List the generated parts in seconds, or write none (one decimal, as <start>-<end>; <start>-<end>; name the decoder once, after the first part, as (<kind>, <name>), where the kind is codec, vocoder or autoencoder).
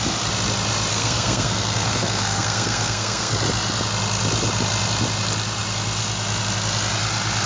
0.9-3.3 (codec, SNAC)